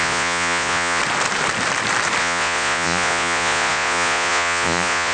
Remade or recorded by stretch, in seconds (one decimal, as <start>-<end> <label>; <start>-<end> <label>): 0.0-1.0 remade; 1.0-2.2 recorded; 2.2-5.1 remade